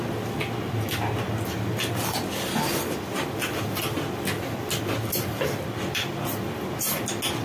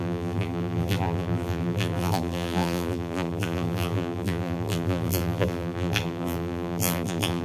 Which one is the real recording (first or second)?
first